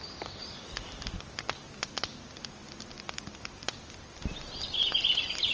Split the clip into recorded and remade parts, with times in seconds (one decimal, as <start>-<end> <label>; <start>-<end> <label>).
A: 0.0-5.5 recorded